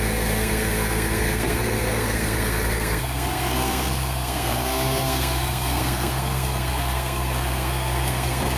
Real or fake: fake